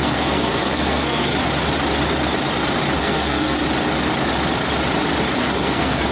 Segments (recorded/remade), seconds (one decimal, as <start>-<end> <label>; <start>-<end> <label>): 0.0-1.3 remade; 1.3-3.0 recorded; 3.0-3.6 remade; 3.6-5.4 recorded; 5.4-6.1 remade